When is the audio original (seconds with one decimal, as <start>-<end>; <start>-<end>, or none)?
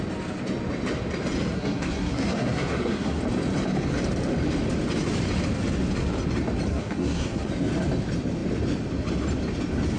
0.0-1.5; 3.2-6.7; 7.5-10.0